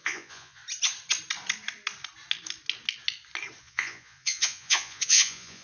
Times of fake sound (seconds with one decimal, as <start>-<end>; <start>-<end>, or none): 0.0-0.6; 3.6-5.6